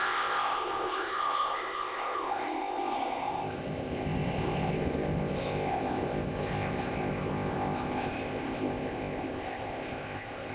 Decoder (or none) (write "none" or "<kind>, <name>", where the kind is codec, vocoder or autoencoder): codec, ZipCodec